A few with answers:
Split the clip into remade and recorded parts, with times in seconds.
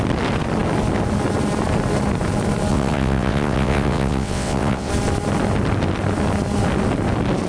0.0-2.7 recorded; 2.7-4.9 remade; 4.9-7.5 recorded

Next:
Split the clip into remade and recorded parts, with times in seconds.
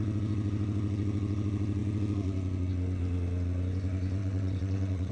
0.0-4.2 recorded; 4.2-5.1 remade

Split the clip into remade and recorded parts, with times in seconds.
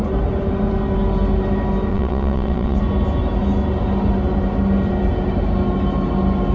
0.0-1.9 recorded; 1.9-2.8 remade; 2.8-6.5 recorded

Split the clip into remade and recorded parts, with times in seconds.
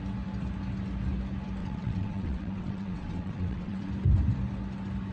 0.0-1.6 recorded; 1.6-3.9 remade; 3.9-5.1 recorded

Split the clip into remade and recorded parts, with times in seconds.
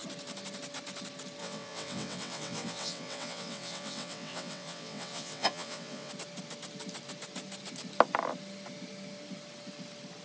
0.0-1.4 recorded; 1.4-6.1 remade; 6.1-10.2 recorded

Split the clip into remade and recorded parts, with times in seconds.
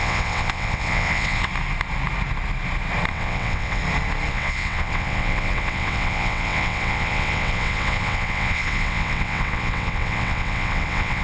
0.0-1.5 remade; 1.5-3.1 recorded; 3.1-3.8 remade; 3.8-4.3 recorded; 4.3-11.2 remade